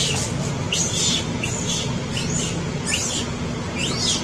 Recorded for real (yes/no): yes